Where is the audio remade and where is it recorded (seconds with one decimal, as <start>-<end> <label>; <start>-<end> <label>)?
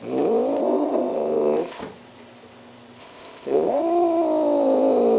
0.0-0.6 recorded; 0.6-1.8 remade; 1.8-3.0 recorded; 3.0-3.8 remade; 3.8-5.2 recorded